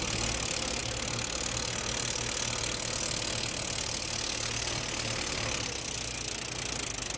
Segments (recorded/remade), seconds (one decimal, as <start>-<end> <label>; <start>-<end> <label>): 0.0-7.2 recorded